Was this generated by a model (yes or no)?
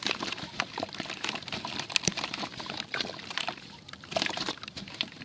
yes